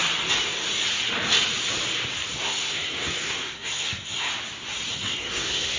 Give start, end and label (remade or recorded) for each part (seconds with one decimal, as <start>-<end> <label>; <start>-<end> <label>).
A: 0.0-2.4 recorded; 2.4-4.3 remade; 4.3-4.9 recorded; 4.9-5.8 remade